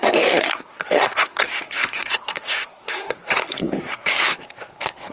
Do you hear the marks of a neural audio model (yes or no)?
yes